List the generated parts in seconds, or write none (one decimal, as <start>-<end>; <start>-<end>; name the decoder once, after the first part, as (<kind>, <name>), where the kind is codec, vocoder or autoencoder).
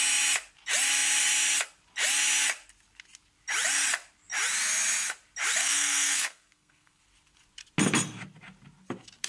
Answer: 5.6-7.0 (codec, SNAC)